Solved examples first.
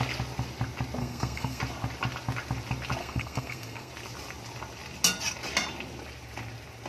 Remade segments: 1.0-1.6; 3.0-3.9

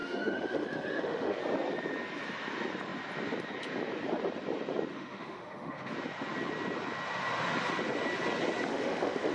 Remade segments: 0.0-1.4; 4.9-5.9; 8.7-9.3

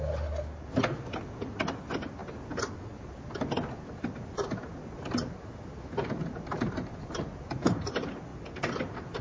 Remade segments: none

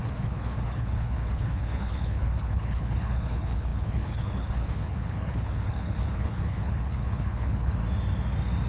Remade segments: 0.0-7.8

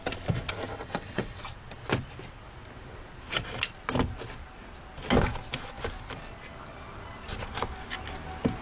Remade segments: 0.7-1.4

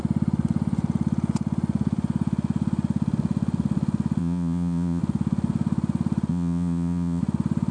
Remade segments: 4.2-5.0; 6.3-7.2

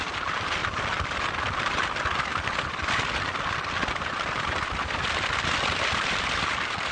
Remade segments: 2.3-6.4

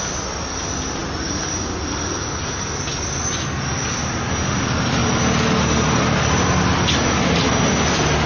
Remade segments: none